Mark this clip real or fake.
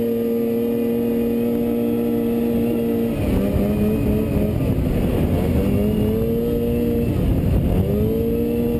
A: real